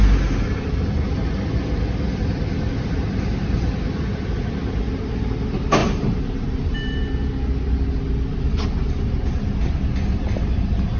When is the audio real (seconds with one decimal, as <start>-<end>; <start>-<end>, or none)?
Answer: 0.0-5.8; 7.0-11.0